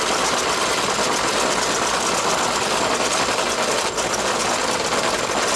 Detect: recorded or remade recorded